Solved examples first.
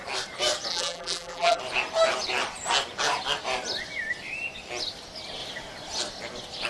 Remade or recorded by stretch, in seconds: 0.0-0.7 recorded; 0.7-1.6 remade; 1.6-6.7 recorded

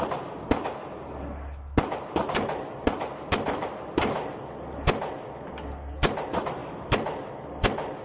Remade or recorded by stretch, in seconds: 0.0-6.6 recorded; 6.6-7.3 remade; 7.3-8.0 recorded

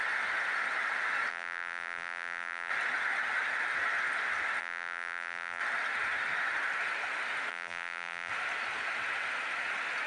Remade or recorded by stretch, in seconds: 0.0-1.3 recorded; 1.3-2.7 remade; 2.7-4.6 recorded; 4.6-5.6 remade; 5.6-7.5 recorded; 7.5-8.3 remade; 8.3-10.1 recorded

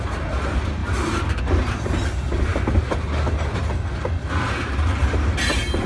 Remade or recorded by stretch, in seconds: 0.0-0.8 recorded; 0.8-1.4 remade; 1.4-5.9 recorded

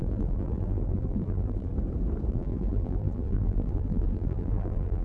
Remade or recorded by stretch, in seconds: 0.0-1.7 remade; 1.7-2.3 recorded; 2.3-5.0 remade

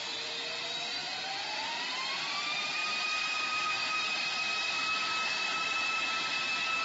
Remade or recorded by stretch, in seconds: 0.0-6.8 recorded

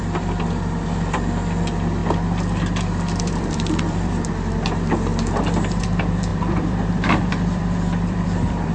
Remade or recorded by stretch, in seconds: 0.0-2.0 remade; 2.0-3.2 recorded; 3.2-5.1 remade; 5.1-5.8 recorded; 5.8-8.7 remade

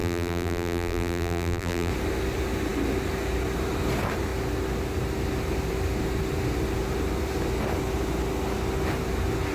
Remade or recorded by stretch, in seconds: 0.0-1.9 remade; 1.9-9.5 recorded